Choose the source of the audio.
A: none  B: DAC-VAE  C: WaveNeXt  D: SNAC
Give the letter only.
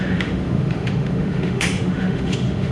B